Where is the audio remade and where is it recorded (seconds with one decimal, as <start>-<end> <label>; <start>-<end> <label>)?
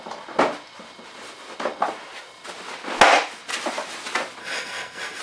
0.0-4.4 recorded; 4.4-5.2 remade